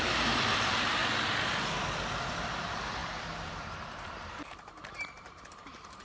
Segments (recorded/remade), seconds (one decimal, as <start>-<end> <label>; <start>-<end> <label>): 0.0-1.0 remade; 1.0-2.3 recorded; 2.3-6.0 remade

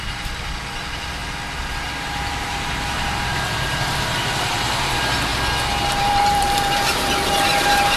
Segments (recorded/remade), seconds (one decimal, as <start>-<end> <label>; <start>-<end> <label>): 0.0-1.2 remade; 1.2-2.1 recorded; 2.1-5.3 remade; 5.3-6.0 recorded; 6.0-8.0 remade

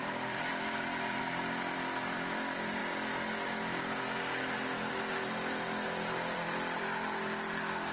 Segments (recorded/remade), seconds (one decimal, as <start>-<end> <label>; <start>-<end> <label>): 0.0-2.8 remade; 2.8-4.9 recorded; 4.9-7.9 remade

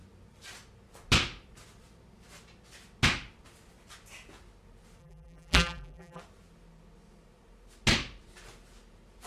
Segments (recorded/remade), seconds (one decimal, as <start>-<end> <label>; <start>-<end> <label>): 0.0-5.0 recorded; 5.0-6.2 remade; 6.2-9.3 recorded

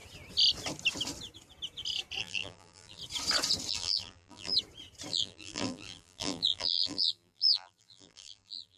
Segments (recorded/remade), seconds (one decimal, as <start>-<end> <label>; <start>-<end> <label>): 0.0-2.2 recorded; 2.2-3.0 remade; 3.0-3.7 recorded; 3.7-4.5 remade; 4.5-5.1 recorded; 5.1-8.8 remade

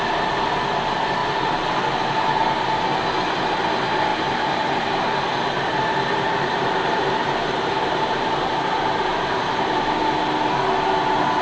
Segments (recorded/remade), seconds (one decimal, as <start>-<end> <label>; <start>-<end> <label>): 0.0-4.1 recorded; 4.1-5.2 remade; 5.2-5.7 recorded; 5.7-10.0 remade; 10.0-11.4 recorded

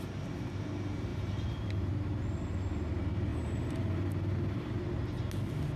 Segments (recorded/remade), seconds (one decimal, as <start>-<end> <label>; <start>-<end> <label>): 0.0-1.1 recorded; 1.1-1.9 remade; 1.9-3.3 recorded; 3.3-4.8 remade; 4.8-5.8 recorded